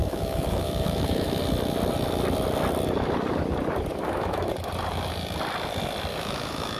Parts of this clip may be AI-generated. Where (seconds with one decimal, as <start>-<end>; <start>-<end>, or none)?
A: 0.0-1.4; 3.9-4.5; 6.1-6.8